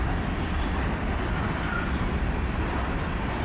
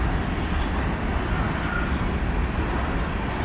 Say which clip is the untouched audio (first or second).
second